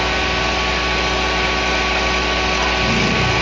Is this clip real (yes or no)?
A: yes